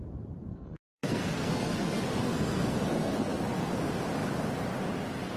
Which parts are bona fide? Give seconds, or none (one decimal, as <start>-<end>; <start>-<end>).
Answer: 0.0-0.5; 3.7-5.4